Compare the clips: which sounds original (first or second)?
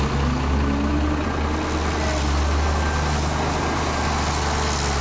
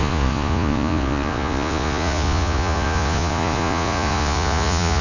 first